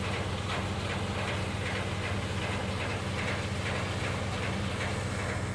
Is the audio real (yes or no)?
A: yes